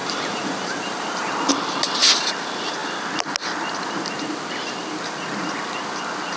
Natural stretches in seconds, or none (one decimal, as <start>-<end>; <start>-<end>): 1.5-6.4